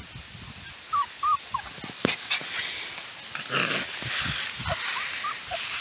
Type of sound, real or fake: real